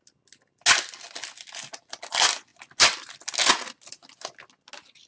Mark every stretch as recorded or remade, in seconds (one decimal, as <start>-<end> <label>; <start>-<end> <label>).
0.0-5.1 recorded